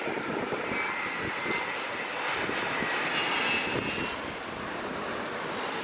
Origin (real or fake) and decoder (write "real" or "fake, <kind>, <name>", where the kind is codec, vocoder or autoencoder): real